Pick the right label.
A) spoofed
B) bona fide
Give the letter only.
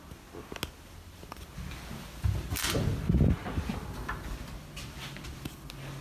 B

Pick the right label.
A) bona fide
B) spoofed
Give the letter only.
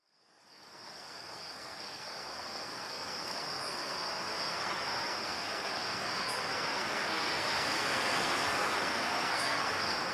B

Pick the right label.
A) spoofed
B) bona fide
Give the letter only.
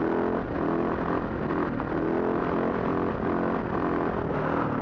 B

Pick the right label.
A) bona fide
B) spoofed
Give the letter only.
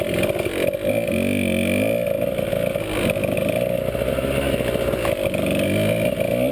A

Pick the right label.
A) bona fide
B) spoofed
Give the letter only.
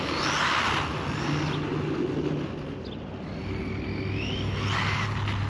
A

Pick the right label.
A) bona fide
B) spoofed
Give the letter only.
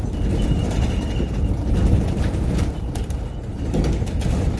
A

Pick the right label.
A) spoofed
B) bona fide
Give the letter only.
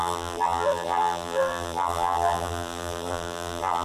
A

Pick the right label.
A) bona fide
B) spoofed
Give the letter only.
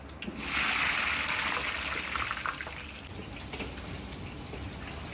A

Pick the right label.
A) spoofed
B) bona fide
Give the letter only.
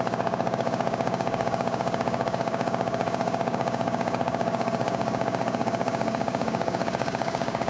A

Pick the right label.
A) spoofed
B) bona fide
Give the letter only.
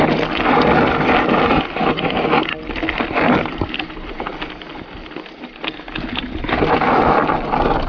B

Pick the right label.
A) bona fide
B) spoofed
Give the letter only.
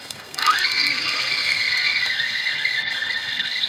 B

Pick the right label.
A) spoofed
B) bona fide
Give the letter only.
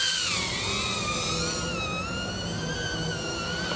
B